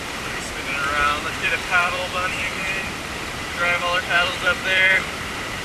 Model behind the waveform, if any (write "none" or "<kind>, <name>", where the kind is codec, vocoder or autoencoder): vocoder, BigVGAN v2